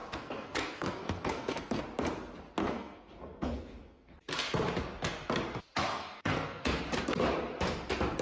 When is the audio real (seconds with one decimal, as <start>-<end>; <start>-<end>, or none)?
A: 1.8-2.6; 4.2-5.9; 6.8-8.2